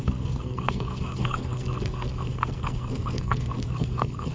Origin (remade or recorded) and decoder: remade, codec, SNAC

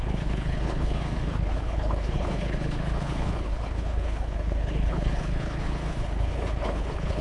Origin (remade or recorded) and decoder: remade, codec, HILCodec